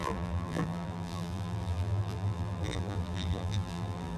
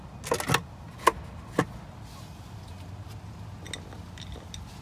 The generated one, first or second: first